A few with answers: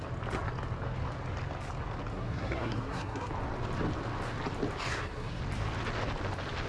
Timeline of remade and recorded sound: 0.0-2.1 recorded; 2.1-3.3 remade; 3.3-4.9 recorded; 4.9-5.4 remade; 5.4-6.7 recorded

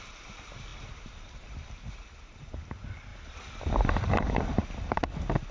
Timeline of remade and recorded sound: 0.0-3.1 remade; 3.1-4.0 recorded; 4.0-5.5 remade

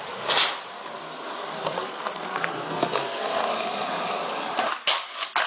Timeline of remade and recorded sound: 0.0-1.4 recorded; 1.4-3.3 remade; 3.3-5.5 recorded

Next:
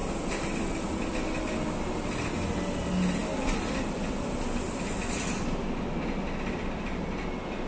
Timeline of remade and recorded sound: 0.0-7.7 recorded

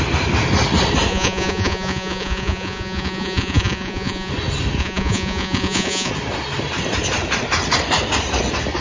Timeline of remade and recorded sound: 0.0-1.1 recorded; 1.1-4.3 remade; 4.3-4.8 recorded; 4.8-6.1 remade; 6.1-8.8 recorded